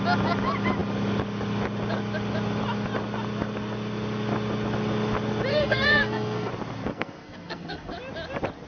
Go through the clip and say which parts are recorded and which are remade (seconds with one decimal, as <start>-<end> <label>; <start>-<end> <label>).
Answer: 0.0-5.5 recorded; 5.5-6.5 remade; 6.5-6.9 recorded; 6.9-7.9 remade; 7.9-8.7 recorded